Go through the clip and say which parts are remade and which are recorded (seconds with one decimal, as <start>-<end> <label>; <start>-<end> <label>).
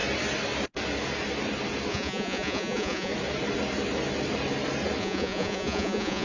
0.0-1.9 recorded; 1.9-3.1 remade; 3.1-5.0 recorded; 5.0-6.2 remade